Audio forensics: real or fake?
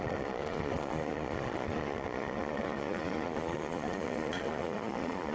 fake